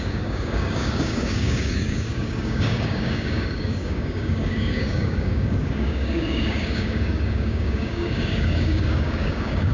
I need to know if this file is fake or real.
fake